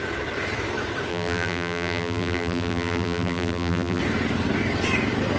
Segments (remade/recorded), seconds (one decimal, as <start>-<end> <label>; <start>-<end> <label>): 0.0-1.1 recorded; 1.1-4.0 remade; 4.0-5.4 recorded